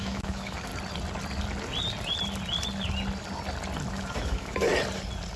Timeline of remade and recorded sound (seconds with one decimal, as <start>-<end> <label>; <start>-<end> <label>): 0.0-0.7 remade; 0.7-3.9 recorded; 3.9-4.7 remade; 4.7-5.4 recorded